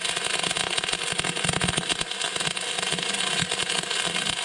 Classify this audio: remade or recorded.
recorded